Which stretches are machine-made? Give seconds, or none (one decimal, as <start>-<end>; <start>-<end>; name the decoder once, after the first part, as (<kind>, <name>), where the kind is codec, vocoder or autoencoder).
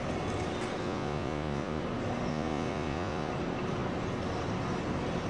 0.8-1.8 (vocoder, Vocos); 2.3-3.3